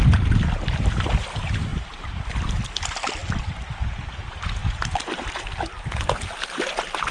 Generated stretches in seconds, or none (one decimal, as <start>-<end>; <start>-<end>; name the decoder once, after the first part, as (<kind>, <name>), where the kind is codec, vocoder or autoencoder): 4.6-5.3 (vocoder, BigVGAN v2)